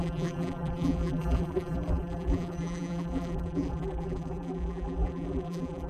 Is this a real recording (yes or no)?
no